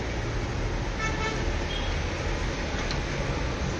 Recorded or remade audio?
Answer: recorded